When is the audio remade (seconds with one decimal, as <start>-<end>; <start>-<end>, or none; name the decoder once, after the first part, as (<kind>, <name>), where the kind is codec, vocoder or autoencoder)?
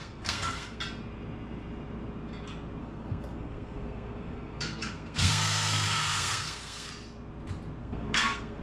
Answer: 0.0-0.8 (codec, SNAC); 2.8-6.9; 7.8-8.6